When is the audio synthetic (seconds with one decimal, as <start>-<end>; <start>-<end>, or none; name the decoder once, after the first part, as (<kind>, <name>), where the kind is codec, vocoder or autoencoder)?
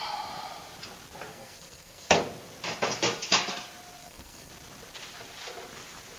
1.3-2.2 (codec, SNAC); 4.0-4.5